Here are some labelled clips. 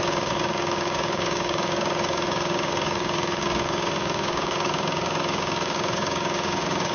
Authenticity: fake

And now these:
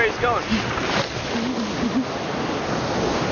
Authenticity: real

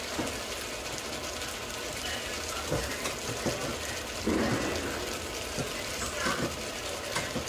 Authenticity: real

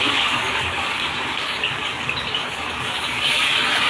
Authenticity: fake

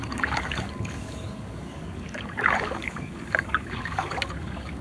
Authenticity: fake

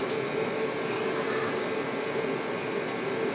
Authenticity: real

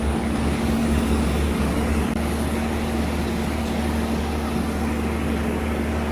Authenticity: fake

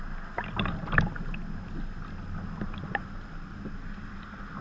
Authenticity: real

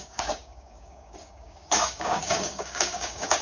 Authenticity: fake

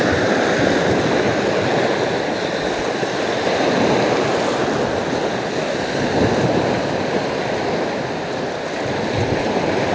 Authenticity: real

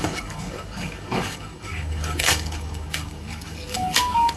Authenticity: fake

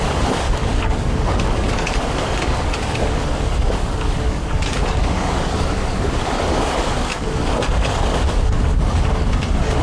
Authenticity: fake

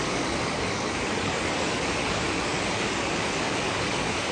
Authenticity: fake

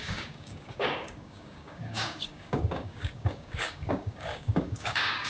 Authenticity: fake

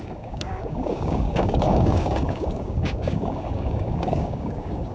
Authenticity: fake